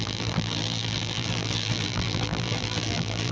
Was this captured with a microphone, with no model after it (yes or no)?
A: no